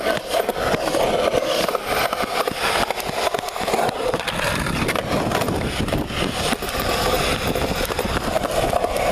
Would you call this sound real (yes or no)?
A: yes